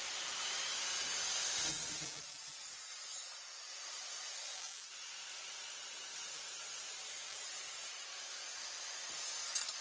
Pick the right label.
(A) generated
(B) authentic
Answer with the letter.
B